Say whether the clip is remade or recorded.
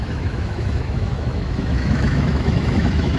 remade